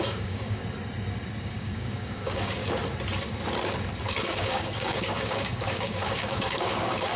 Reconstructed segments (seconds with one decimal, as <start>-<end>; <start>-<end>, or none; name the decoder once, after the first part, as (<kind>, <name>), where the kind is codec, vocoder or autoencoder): 0.0-0.6 (codec, DAC); 1.4-2.6; 4.2-7.2